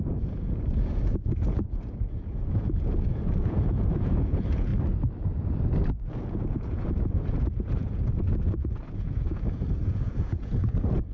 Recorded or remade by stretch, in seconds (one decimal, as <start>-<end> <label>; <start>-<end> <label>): 0.0-4.7 remade; 4.7-6.3 recorded; 6.3-11.1 remade